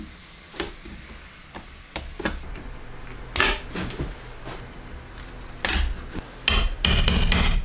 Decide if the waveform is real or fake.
real